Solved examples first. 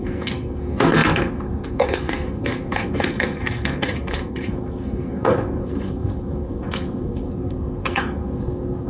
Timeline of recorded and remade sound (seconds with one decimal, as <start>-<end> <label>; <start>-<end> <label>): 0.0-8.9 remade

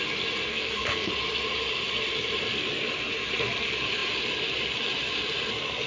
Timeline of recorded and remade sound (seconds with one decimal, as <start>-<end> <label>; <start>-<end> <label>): 0.0-0.5 recorded; 0.5-1.1 remade; 1.1-5.9 recorded

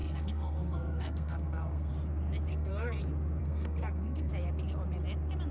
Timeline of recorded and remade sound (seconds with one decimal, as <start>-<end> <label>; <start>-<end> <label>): 0.0-1.9 remade; 1.9-2.5 recorded; 2.5-3.0 remade; 3.0-3.4 recorded; 3.4-4.3 remade; 4.3-5.5 recorded

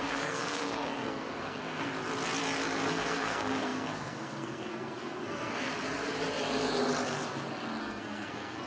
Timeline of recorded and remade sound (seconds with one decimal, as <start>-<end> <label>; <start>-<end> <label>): 0.0-1.9 remade; 1.9-2.9 recorded; 2.9-5.7 remade; 5.7-7.8 recorded; 7.8-8.7 remade